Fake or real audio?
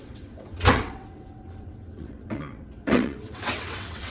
fake